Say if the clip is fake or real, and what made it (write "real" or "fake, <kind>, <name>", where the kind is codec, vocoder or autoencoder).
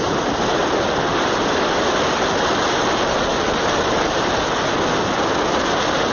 real